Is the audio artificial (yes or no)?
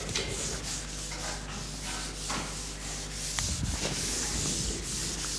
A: no